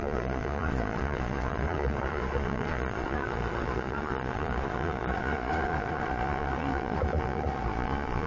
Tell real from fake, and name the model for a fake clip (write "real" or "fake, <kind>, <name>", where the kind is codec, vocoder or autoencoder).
fake, vocoder, Vocos